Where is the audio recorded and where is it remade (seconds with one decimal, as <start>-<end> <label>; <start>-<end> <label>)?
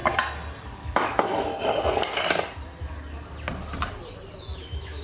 0.0-0.8 recorded; 0.8-1.5 remade; 1.5-4.4 recorded; 4.4-5.0 remade